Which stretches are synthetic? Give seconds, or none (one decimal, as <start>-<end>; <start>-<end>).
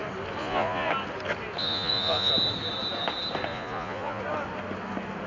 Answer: 0.4-0.9; 1.6-2.3; 3.5-4.2